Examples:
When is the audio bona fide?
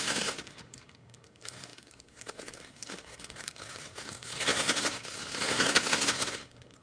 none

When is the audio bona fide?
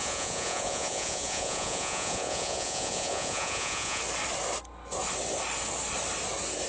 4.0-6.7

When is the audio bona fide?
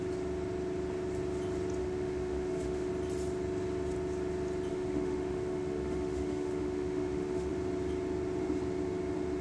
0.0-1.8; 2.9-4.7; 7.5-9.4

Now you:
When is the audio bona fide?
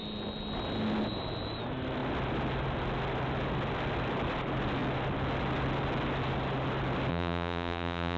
0.0-7.1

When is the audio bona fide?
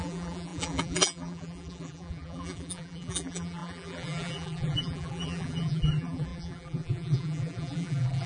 none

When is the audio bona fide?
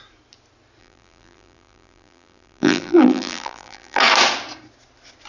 0.0-0.8; 4.0-5.3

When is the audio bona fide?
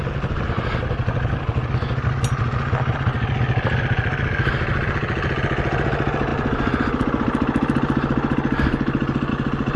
0.0-9.8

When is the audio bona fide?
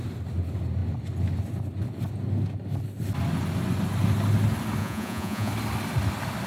0.0-4.8; 5.5-6.5